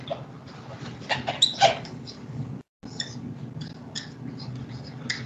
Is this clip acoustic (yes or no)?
yes